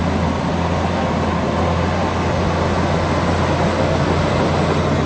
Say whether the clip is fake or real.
real